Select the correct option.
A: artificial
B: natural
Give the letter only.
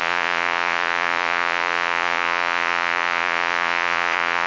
A